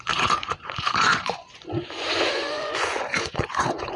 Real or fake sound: fake